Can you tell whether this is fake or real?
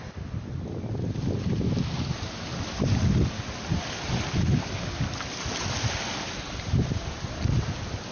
real